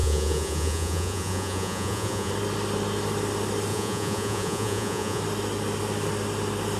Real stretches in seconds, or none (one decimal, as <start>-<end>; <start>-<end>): 2.3-3.7; 5.2-6.8

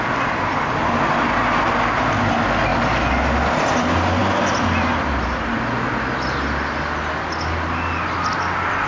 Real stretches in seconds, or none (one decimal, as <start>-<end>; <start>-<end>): 0.0-8.9

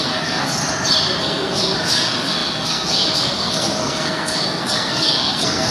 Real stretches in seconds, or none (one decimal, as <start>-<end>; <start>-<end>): 0.6-1.2

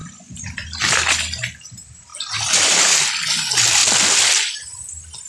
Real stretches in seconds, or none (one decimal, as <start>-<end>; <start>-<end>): 0.8-2.1; 2.8-5.3

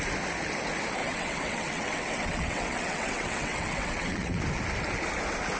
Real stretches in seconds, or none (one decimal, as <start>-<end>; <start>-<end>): 0.0-1.0; 4.4-5.6